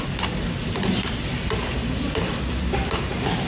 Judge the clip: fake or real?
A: real